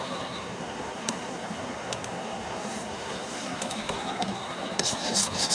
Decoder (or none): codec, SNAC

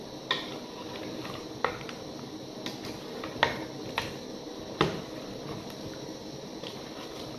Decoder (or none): none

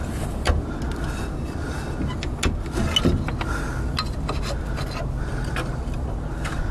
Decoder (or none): none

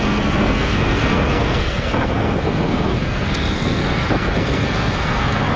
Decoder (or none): codec, SNAC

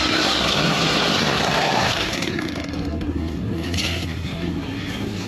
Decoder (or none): codec, SNAC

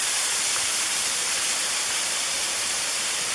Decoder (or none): vocoder, BigVGAN v2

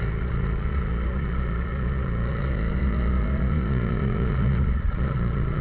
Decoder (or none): vocoder, Vocos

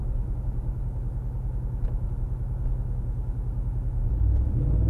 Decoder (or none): none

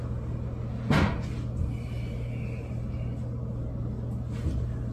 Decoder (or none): none